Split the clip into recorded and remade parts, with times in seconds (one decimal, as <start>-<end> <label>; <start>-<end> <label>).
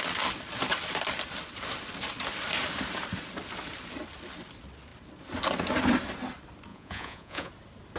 0.0-6.7 recorded; 6.7-7.5 remade; 7.5-8.0 recorded